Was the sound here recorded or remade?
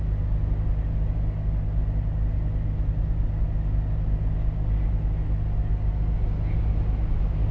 recorded